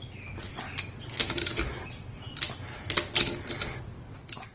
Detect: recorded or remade recorded